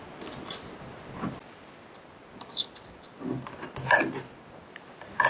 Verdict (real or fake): real